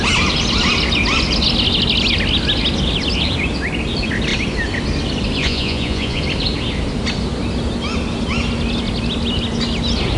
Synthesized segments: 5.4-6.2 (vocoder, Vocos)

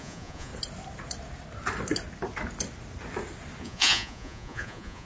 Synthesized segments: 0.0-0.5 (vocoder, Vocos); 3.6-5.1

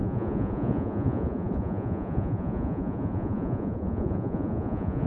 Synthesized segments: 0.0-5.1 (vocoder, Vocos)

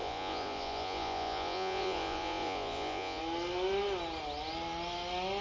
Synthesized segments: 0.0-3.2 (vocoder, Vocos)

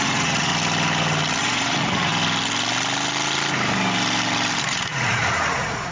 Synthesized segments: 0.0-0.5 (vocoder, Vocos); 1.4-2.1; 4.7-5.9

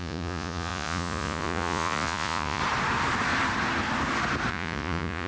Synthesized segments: 0.0-2.6 (vocoder, Vocos); 4.5-5.3

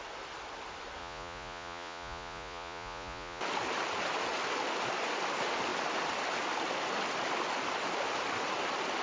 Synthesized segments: 1.0-3.4 (vocoder, Vocos)

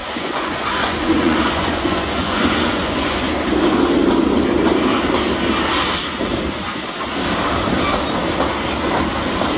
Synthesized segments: 0.0-3.3 (vocoder, Vocos)